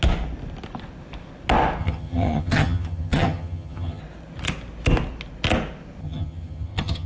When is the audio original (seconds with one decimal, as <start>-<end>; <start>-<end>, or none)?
0.0-1.8; 4.0-6.0